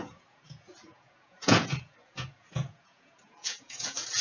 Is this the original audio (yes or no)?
no